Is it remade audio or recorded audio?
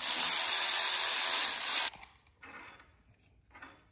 recorded